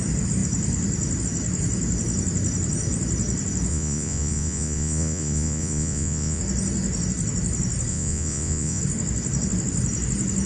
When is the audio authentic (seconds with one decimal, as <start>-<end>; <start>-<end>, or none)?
0.0-3.7; 6.4-7.9; 8.8-10.5